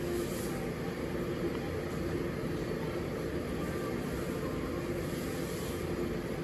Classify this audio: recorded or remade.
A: recorded